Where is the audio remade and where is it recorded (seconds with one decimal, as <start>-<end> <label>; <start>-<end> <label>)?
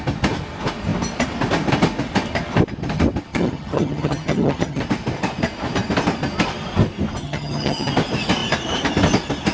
0.0-3.3 recorded; 3.3-4.8 remade; 4.8-7.2 recorded; 7.2-7.9 remade; 7.9-9.5 recorded